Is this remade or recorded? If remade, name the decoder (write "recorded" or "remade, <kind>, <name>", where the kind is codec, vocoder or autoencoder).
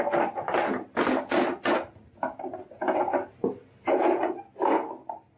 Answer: recorded